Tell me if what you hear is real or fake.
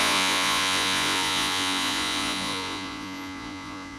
fake